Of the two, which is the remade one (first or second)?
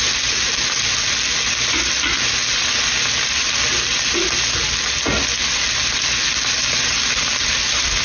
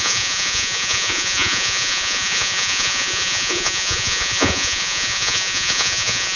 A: second